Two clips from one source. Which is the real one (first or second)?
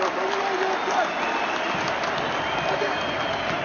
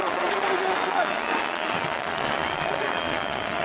first